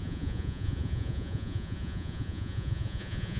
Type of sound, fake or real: fake